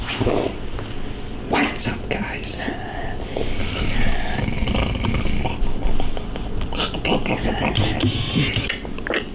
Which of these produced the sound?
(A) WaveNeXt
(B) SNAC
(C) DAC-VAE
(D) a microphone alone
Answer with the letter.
D